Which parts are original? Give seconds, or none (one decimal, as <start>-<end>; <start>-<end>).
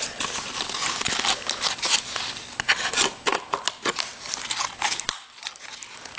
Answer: 0.0-6.2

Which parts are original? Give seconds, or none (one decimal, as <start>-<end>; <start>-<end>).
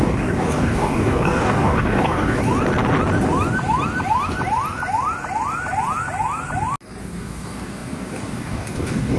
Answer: 2.4-7.0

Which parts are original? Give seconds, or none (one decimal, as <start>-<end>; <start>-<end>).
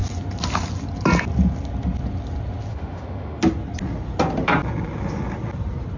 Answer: 0.0-2.7; 3.4-6.0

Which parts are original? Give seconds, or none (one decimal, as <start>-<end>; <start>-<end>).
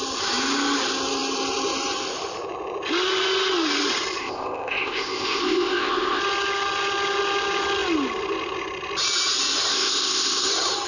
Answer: 0.0-4.2; 6.2-9.7; 10.5-10.9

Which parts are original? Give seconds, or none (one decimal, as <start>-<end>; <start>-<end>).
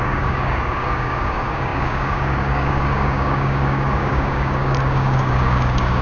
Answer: none